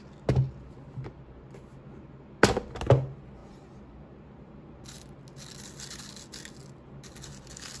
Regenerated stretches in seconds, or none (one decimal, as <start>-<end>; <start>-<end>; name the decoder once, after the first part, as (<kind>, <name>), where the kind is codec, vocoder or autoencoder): none